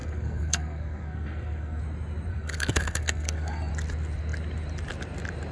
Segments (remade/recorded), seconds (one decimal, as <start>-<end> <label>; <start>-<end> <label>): 0.0-1.8 remade; 1.8-2.3 recorded; 2.3-3.7 remade; 3.7-5.5 recorded